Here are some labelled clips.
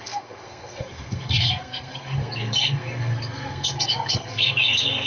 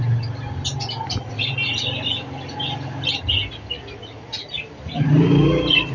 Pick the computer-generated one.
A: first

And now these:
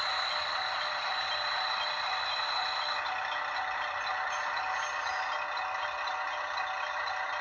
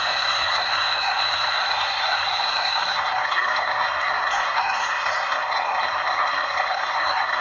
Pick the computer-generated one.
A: second